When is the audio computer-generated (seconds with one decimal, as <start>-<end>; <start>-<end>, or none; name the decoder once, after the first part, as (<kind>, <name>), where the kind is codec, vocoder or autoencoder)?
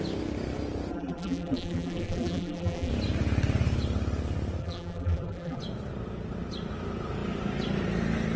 0.9-2.9 (vocoder, BigVGAN v2); 4.6-5.6